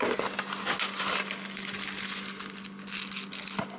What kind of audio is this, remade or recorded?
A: recorded